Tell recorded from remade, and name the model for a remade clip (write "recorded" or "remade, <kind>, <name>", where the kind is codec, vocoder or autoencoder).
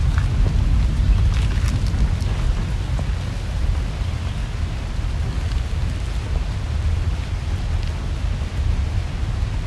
recorded